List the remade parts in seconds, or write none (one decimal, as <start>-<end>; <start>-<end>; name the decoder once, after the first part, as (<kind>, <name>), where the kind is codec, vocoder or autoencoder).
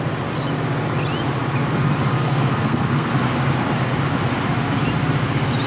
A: 2.1-3.1 (codec, SNAC)